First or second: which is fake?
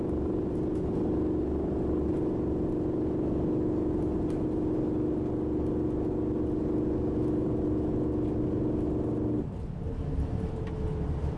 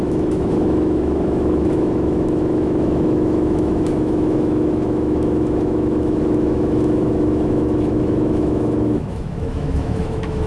second